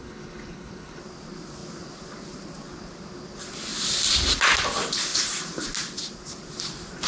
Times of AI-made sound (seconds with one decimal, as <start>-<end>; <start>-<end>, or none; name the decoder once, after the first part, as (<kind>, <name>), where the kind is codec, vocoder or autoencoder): 0.0-1.0 (codec, HILCodec)